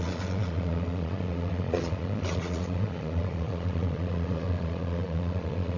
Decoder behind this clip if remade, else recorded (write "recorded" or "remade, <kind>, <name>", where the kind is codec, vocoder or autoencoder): remade, vocoder, Vocos